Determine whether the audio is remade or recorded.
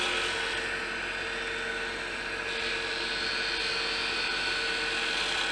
recorded